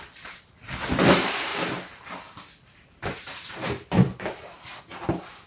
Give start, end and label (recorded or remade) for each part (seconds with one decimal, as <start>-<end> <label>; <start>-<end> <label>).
0.0-5.5 recorded